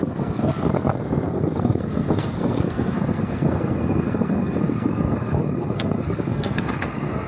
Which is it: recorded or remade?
remade